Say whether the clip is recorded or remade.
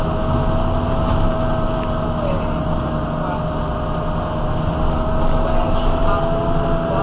recorded